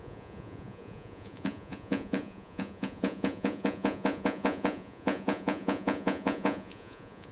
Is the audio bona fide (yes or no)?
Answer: no